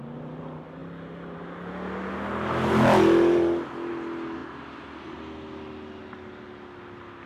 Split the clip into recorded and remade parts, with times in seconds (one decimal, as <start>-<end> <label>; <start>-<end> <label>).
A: 0.0-7.3 recorded

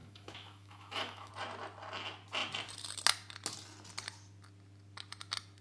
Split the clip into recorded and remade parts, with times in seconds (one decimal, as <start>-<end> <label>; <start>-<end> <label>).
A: 0.0-1.3 remade; 1.3-5.6 recorded

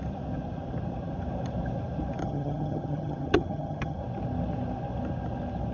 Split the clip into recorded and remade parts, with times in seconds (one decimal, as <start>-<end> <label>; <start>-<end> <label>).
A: 0.0-2.2 recorded; 2.2-4.0 remade; 4.0-5.7 recorded

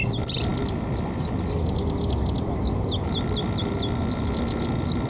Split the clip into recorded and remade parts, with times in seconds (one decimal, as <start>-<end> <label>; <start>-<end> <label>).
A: 0.0-5.1 recorded

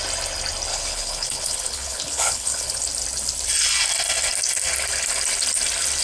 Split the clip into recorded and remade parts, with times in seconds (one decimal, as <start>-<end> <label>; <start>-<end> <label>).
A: 0.0-0.7 recorded; 0.7-2.8 remade; 2.8-6.0 recorded

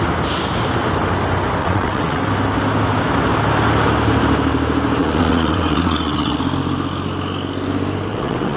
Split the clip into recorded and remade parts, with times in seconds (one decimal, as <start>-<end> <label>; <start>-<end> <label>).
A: 0.0-1.6 recorded; 1.6-2.2 remade; 2.2-5.0 recorded; 5.0-6.4 remade; 6.4-8.1 recorded; 8.1-8.6 remade

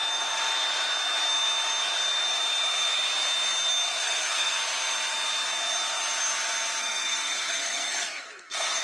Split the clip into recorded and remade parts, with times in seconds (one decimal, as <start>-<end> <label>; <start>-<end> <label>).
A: 0.0-4.0 recorded; 4.0-4.6 remade; 4.6-6.8 recorded; 6.8-8.8 remade

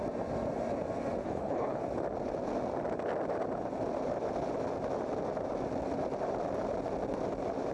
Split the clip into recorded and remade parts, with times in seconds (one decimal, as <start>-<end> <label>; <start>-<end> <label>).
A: 0.0-1.2 recorded; 1.2-1.8 remade; 1.8-7.7 recorded